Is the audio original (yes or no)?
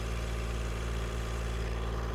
no